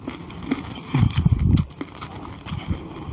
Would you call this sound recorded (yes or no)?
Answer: yes